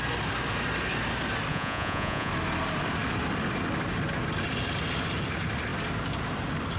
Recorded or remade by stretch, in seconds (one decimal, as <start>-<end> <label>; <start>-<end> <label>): 0.0-1.5 recorded; 1.5-2.3 remade; 2.3-6.8 recorded